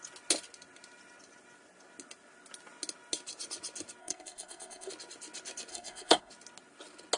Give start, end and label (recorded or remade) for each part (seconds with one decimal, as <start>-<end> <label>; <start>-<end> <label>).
0.0-4.0 recorded; 4.0-4.9 remade; 4.9-5.7 recorded; 5.7-6.3 remade; 6.3-7.2 recorded